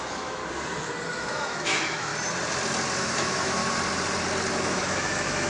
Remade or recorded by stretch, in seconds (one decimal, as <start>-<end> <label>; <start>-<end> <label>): 0.0-0.4 remade; 0.4-1.1 recorded; 1.1-2.1 remade; 2.1-3.0 recorded; 3.0-3.6 remade; 3.6-4.6 recorded; 4.6-5.5 remade